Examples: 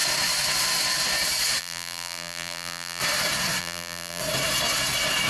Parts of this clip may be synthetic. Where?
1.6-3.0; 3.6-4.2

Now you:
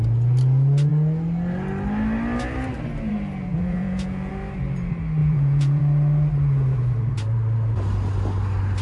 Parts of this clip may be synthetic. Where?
3.5-4.3; 5.2-5.8

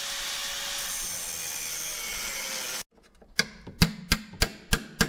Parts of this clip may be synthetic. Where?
none

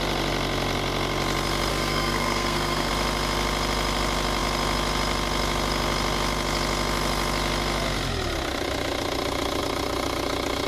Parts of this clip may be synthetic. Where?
1.7-2.9